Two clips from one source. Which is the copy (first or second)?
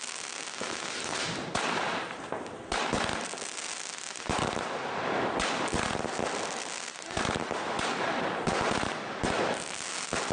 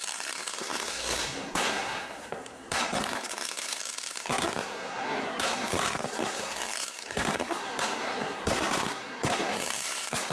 second